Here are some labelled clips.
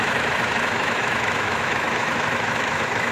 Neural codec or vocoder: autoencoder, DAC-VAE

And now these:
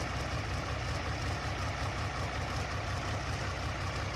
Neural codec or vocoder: none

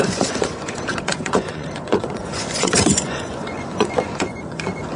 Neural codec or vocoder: vocoder, Vocos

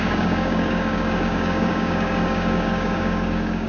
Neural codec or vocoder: codec, DAC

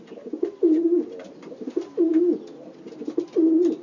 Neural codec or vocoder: none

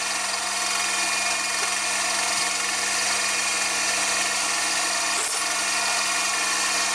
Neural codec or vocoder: none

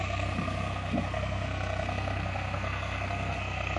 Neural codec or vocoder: codec, SNAC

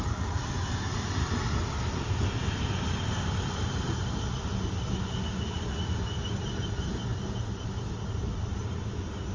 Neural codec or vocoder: none